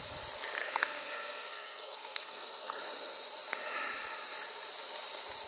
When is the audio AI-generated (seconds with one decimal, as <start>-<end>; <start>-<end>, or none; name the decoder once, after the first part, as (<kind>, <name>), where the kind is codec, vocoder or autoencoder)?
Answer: 0.6-2.8 (codec, SNAC)